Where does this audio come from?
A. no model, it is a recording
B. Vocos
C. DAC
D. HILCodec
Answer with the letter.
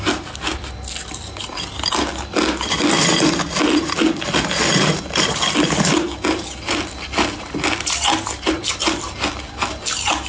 A